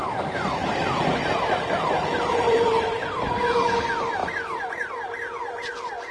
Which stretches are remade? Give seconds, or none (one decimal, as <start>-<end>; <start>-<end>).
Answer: 0.6-3.3; 4.2-4.9